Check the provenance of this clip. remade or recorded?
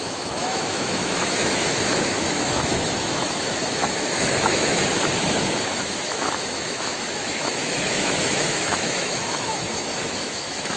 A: remade